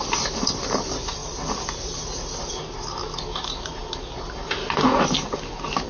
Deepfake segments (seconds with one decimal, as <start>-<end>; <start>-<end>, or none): none